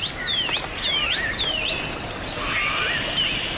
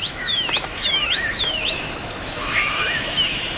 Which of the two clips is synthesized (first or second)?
second